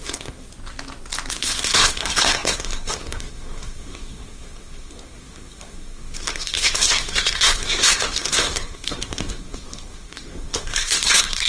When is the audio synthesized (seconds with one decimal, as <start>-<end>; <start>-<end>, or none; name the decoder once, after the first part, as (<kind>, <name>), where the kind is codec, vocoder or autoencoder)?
0.0-0.5 (codec, SNAC); 1.3-11.5